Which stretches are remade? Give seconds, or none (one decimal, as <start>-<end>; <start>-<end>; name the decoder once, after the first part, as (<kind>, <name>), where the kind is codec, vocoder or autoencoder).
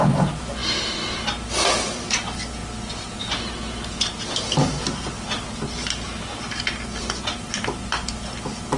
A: none